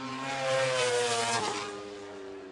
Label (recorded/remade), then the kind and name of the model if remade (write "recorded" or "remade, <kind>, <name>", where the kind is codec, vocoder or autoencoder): remade, vocoder, BigVGAN v2